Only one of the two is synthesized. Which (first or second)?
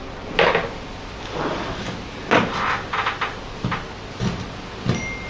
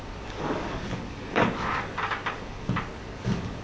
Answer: second